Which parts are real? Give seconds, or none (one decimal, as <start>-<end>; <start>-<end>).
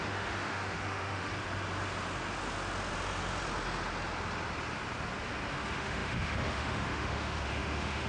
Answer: 1.3-5.5